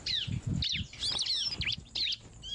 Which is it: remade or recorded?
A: recorded